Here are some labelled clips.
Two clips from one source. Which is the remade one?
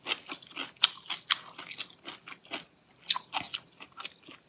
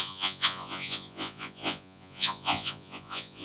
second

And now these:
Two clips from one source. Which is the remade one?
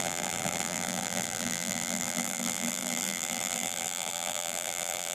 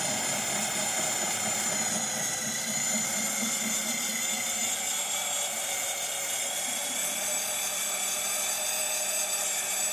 first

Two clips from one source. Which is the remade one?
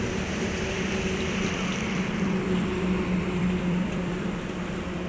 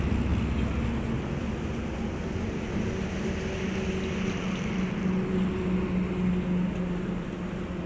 first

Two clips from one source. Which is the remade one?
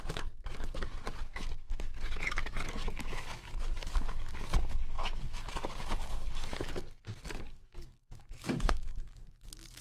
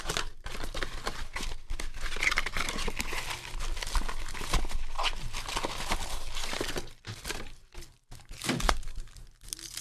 first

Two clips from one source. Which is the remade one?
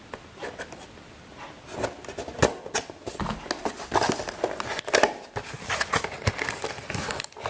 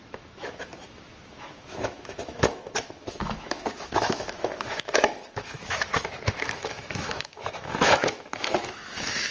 second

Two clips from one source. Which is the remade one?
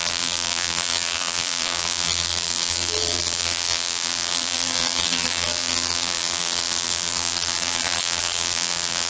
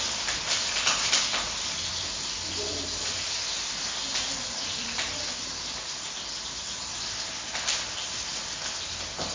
first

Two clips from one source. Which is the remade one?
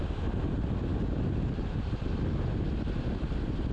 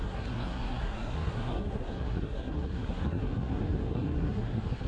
second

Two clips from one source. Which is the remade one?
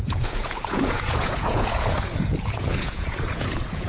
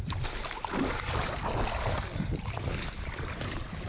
first